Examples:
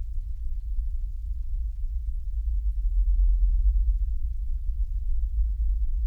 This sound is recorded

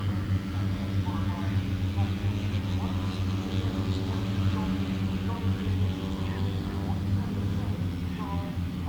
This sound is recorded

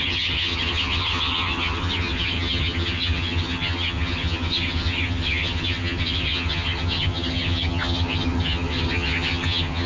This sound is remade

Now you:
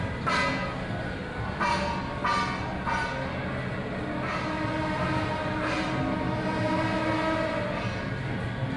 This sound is recorded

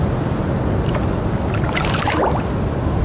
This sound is recorded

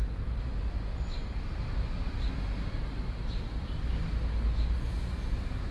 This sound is recorded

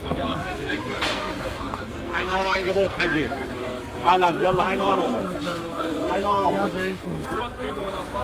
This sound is remade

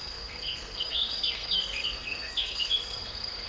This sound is remade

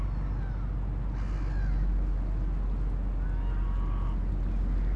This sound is recorded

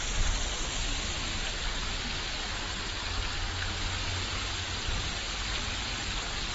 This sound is recorded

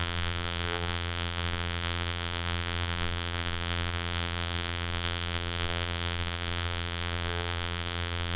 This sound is remade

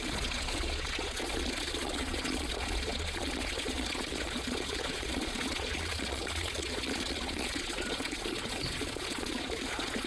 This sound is remade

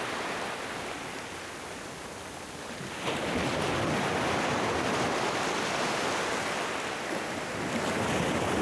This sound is recorded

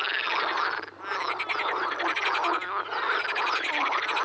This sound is recorded